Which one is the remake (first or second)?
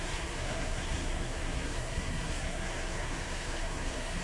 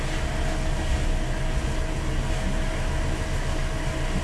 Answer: first